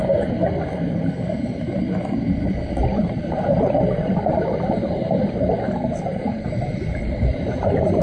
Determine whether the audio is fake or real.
real